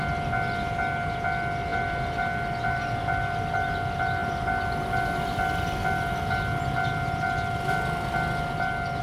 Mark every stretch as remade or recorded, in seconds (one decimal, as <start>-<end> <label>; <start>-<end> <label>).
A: 0.0-9.0 recorded